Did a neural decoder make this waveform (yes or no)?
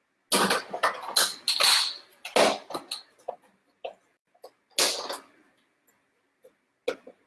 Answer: no